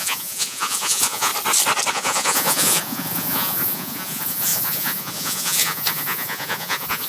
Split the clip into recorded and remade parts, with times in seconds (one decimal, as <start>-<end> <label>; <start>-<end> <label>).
0.0-1.3 remade; 1.3-1.9 recorded; 1.9-7.1 remade